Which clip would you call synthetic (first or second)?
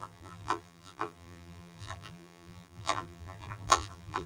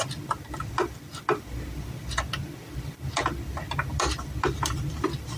first